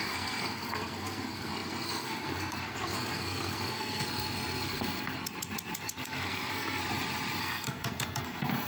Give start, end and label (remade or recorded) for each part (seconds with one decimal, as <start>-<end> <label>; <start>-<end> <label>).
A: 0.0-5.2 remade; 5.2-5.8 recorded; 5.8-6.8 remade; 6.8-7.4 recorded; 7.4-8.7 remade